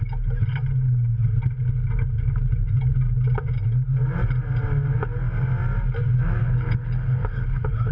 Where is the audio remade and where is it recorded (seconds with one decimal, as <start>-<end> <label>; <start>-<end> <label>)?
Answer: 0.0-6.4 recorded; 6.4-7.9 remade